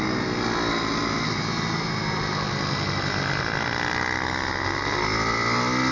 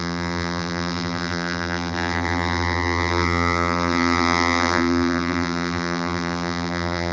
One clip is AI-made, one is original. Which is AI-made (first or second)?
second